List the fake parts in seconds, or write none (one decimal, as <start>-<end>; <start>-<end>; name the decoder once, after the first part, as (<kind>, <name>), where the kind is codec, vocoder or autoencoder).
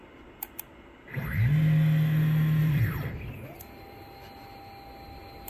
2.6-4.1 (vocoder, BigVGAN v2)